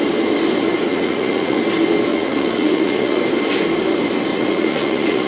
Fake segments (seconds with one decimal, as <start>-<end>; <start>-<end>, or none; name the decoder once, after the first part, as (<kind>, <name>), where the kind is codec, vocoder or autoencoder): 0.9-1.6 (vocoder, Vocos); 2.1-3.2; 4.3-5.3